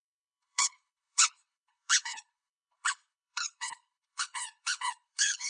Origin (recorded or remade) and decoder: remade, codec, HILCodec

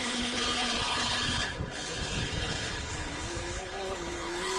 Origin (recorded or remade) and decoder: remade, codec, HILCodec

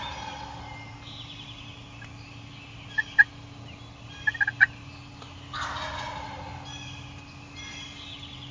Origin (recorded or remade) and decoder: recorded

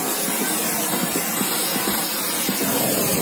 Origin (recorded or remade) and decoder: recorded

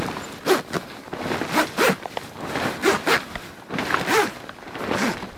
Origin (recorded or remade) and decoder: recorded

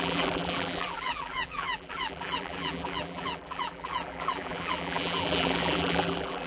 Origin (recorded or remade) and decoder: remade, vocoder, BigVGAN v2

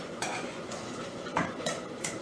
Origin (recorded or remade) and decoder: remade, vocoder, Vocos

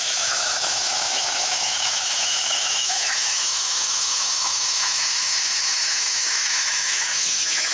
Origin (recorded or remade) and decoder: remade, autoencoder, DAC-VAE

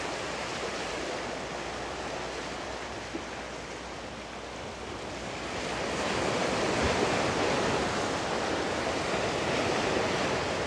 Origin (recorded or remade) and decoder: recorded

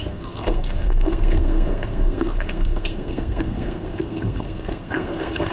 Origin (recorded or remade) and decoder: remade, codec, SNAC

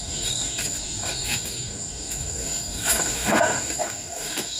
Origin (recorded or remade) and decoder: remade, codec, DAC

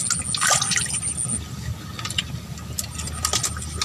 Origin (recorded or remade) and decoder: recorded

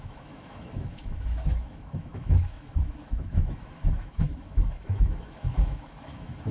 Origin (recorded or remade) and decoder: remade, autoencoder, DAC-VAE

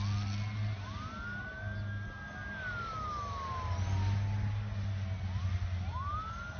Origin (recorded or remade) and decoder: recorded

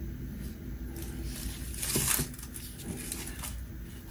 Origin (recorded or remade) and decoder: recorded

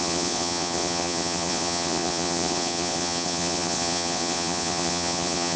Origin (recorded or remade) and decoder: remade, vocoder, Vocos